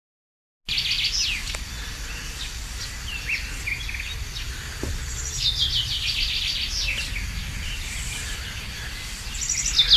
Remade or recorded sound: recorded